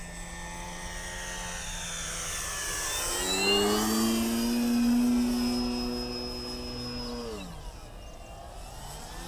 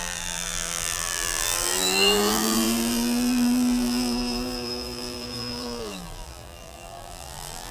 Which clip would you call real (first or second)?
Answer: first